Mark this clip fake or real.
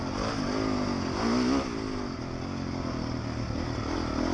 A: real